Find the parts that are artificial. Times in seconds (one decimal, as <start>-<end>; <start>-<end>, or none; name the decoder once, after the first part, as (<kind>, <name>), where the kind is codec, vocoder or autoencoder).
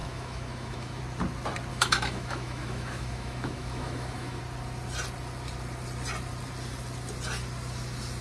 0.0-1.0 (autoencoder, DAC-VAE); 1.7-4.4